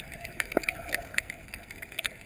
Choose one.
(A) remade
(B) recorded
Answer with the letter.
A